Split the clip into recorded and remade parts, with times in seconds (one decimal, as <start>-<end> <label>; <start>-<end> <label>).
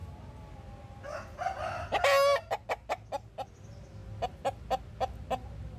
0.0-5.8 recorded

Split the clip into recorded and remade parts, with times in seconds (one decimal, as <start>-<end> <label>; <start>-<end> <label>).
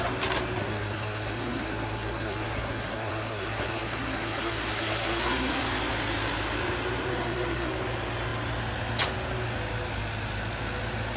0.0-0.6 recorded; 0.6-5.6 remade; 5.6-7.1 recorded; 7.1-7.7 remade; 7.7-11.2 recorded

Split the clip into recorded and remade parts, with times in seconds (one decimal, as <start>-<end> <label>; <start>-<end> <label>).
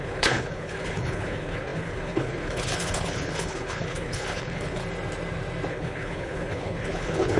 0.0-4.8 remade; 4.8-5.7 recorded; 5.7-7.4 remade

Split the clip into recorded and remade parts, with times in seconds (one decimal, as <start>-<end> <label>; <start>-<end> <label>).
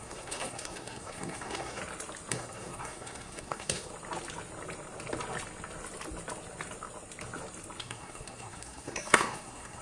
0.0-1.8 remade; 1.8-2.3 recorded; 2.3-3.9 remade; 3.9-7.8 recorded; 7.8-9.8 remade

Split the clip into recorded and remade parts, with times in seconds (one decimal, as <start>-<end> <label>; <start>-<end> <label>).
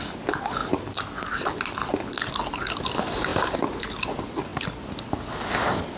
0.0-6.0 recorded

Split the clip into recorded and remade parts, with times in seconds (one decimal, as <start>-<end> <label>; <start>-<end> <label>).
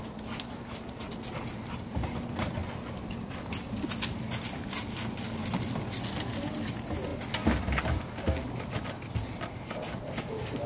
0.0-10.7 recorded